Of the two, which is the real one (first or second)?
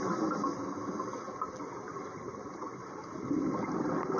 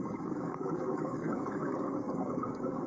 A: first